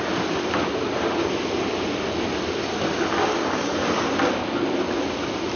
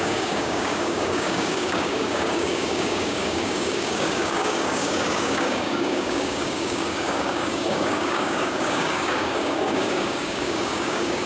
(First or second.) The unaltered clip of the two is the first